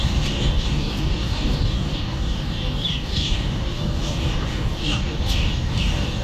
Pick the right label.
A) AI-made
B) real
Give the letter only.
A